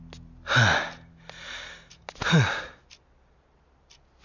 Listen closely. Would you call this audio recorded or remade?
recorded